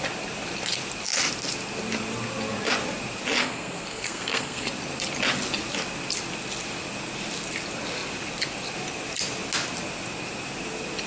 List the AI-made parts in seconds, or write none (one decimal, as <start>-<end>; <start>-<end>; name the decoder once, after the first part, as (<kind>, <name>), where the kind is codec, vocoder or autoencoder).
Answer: 3.4-4.7 (codec, SNAC)

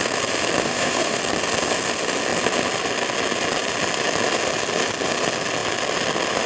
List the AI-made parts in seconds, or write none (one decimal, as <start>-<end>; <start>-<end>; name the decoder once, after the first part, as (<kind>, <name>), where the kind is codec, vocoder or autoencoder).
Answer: 0.6-1.2 (autoencoder, DAC-VAE)

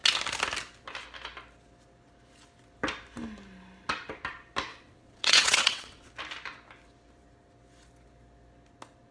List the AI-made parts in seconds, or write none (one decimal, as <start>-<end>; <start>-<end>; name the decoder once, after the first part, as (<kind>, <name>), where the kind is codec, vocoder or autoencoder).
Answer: 4.7-6.1 (vocoder, WaveNeXt)

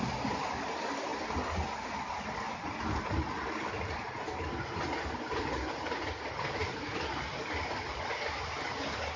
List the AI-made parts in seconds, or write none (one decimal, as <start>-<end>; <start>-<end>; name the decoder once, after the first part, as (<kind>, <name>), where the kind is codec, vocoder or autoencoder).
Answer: none

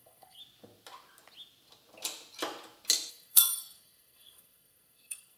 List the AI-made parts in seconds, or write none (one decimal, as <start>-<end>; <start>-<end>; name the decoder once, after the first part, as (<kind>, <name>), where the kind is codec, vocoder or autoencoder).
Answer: 0.0-0.4 (codec, SNAC); 3.1-5.4

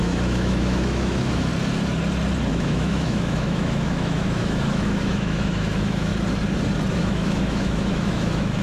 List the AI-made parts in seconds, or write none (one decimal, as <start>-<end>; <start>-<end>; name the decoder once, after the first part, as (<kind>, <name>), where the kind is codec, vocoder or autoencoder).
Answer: 0.0-1.5 (autoencoder, DAC-VAE); 2.5-6.1; 6.9-8.6

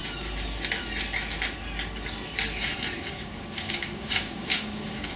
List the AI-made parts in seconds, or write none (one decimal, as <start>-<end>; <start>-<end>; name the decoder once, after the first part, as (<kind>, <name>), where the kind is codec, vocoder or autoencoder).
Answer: 3.1-5.2 (codec, DAC)